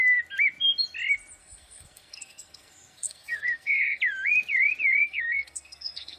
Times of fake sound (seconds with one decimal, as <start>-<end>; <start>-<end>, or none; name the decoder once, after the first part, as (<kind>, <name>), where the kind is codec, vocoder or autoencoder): 1.4-4.0 (codec, SNAC); 5.0-6.2